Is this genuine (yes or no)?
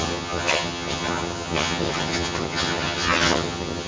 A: no